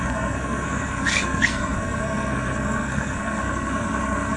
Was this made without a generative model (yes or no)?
no